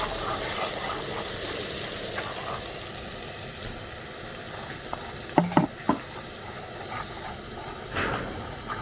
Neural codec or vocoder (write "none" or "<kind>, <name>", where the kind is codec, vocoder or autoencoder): none